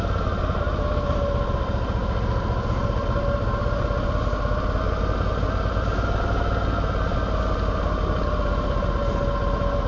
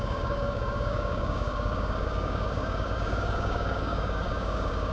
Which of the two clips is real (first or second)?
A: first